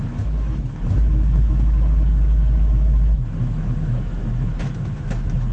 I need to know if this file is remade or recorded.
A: remade